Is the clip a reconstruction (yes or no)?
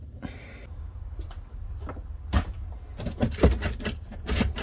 no